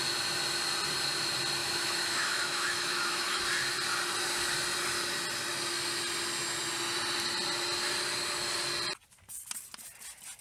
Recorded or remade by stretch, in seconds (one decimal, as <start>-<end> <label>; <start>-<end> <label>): 0.0-1.6 recorded; 1.6-3.4 remade; 3.4-10.4 recorded